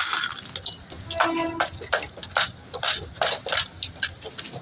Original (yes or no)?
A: yes